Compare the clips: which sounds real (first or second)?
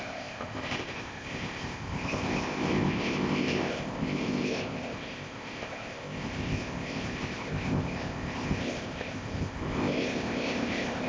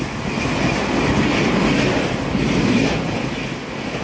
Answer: second